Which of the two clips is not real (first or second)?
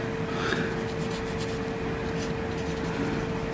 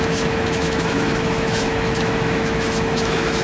second